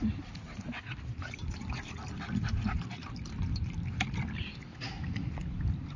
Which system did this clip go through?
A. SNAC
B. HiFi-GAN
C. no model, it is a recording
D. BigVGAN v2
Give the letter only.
C